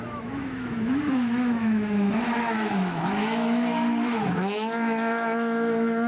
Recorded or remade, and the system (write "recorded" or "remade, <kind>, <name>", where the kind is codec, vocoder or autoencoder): remade, autoencoder, DAC-VAE